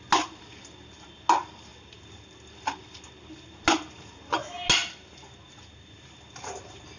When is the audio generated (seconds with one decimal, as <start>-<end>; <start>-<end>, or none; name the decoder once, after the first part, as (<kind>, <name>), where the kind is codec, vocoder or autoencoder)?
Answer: none